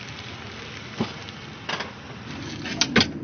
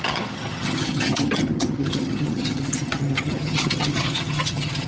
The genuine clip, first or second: first